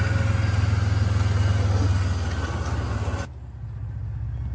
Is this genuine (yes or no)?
yes